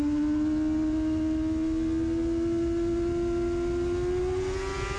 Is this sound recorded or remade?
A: recorded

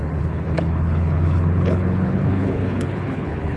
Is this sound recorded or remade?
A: remade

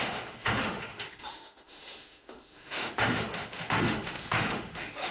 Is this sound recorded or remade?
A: remade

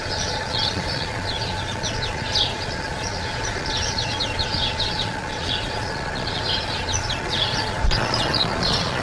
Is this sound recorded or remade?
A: remade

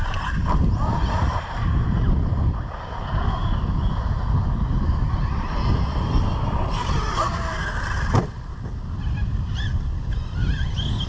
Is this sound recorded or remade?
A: recorded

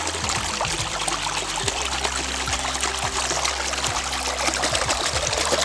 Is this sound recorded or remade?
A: recorded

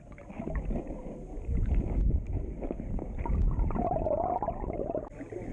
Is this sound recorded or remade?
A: recorded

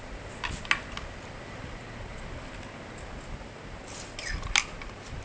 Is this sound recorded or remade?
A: recorded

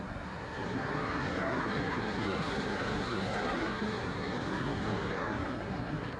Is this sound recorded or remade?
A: remade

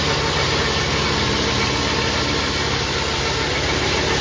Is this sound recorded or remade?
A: recorded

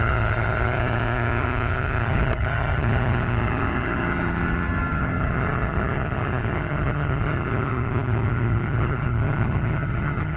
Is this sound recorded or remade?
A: remade